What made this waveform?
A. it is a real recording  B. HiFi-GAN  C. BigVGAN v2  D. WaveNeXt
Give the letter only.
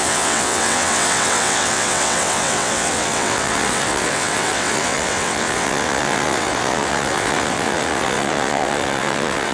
D